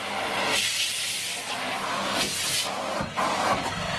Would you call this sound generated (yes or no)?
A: no